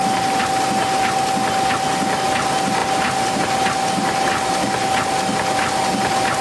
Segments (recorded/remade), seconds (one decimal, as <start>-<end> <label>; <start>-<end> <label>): 0.0-6.4 recorded